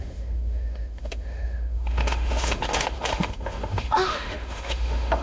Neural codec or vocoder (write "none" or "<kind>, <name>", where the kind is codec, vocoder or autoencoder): autoencoder, DAC-VAE